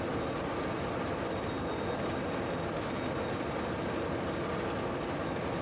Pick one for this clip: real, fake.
real